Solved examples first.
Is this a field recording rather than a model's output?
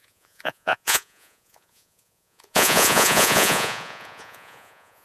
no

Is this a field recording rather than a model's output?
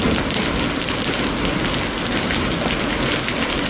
yes